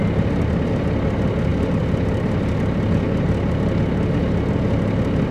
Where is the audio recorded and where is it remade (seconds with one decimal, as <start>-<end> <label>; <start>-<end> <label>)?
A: 0.0-5.3 recorded

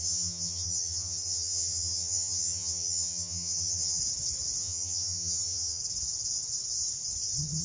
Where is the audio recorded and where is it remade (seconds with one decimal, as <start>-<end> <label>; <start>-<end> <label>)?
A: 0.0-4.0 remade; 4.0-4.6 recorded; 4.6-5.8 remade; 5.8-7.6 recorded

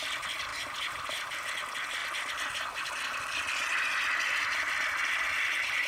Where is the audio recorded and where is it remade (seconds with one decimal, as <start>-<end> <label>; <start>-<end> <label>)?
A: 0.0-5.9 recorded

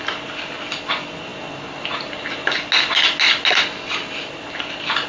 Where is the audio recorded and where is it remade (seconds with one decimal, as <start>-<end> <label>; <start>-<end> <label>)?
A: 0.0-5.1 recorded

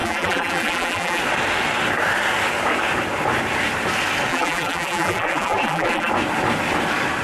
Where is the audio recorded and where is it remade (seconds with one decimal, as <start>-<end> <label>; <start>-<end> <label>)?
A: 0.0-1.2 remade; 1.2-4.3 recorded; 4.3-6.1 remade; 6.1-7.2 recorded